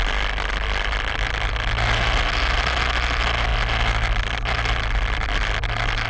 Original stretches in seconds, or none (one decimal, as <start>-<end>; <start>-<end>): 0.0-6.1